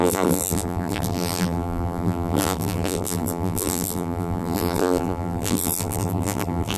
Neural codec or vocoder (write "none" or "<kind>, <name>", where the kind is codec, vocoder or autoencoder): vocoder, BigVGAN v2